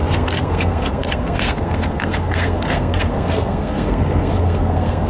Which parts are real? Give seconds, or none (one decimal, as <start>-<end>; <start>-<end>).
none